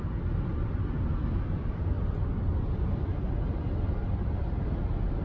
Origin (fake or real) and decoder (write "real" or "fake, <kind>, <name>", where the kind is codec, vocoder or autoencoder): real